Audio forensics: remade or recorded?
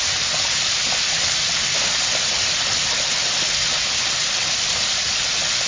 recorded